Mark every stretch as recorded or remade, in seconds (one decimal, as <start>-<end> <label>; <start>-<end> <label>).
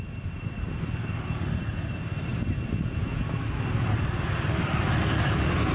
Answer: 0.0-5.7 recorded